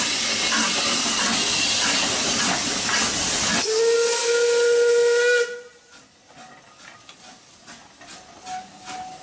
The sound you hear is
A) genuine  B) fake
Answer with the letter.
A